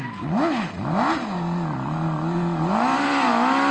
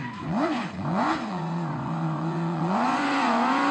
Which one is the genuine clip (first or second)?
first